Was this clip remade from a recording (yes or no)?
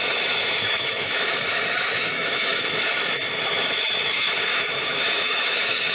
yes